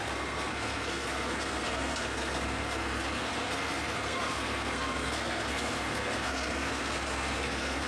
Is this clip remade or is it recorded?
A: remade